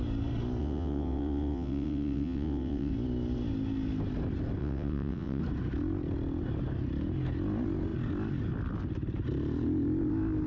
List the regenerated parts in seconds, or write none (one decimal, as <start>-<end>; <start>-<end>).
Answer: 0.6-2.9; 4.6-5.4